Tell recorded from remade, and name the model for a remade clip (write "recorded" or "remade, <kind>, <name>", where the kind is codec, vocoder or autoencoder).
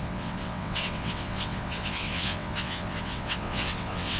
remade, vocoder, WaveNeXt